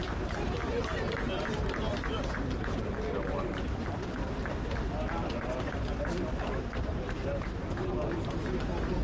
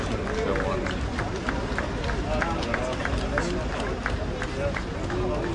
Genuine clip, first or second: second